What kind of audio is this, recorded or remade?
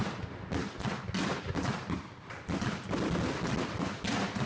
recorded